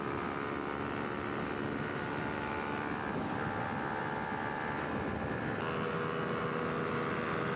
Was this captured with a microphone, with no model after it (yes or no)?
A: yes